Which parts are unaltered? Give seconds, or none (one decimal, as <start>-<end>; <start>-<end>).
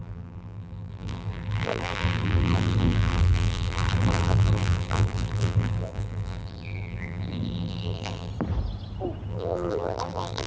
8.3-9.3